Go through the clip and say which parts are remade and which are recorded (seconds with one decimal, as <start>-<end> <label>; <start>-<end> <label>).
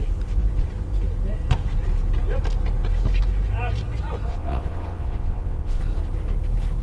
0.0-4.3 recorded; 4.3-5.8 remade; 5.8-6.8 recorded